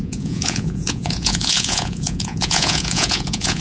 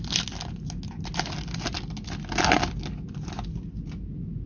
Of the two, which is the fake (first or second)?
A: first